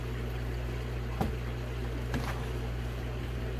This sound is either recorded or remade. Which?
recorded